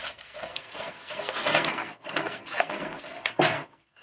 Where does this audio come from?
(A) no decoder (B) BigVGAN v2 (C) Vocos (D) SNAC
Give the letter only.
D